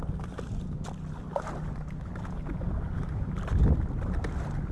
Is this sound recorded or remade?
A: recorded